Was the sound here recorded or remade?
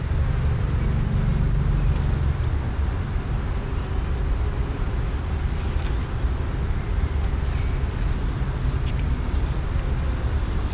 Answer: recorded